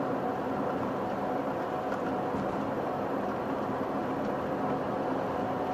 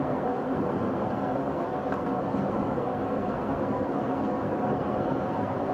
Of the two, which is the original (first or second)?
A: first